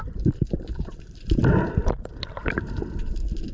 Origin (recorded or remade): remade